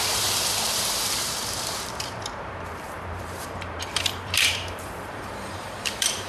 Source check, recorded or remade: remade